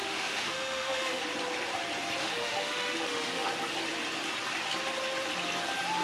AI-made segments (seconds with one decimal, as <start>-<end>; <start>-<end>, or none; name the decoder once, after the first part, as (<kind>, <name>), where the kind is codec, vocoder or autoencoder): 0.0-1.2 (autoencoder, DAC-VAE); 2.2-3.5